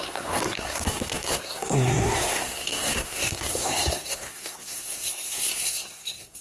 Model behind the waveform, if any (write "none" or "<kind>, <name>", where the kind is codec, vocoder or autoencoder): codec, SNAC